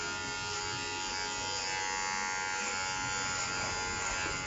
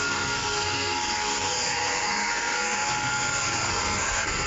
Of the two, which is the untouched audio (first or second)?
first